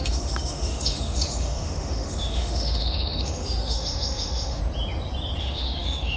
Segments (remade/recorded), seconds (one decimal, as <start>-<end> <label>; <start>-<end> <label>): 0.0-4.6 remade; 4.6-5.4 recorded; 5.4-6.2 remade